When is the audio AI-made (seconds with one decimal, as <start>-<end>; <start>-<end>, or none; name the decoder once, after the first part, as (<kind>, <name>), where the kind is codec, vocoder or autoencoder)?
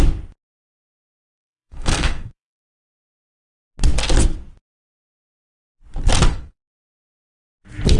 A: 1.1-3.3 (codec, SNAC); 6.3-7.3